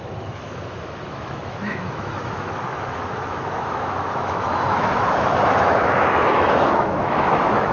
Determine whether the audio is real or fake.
fake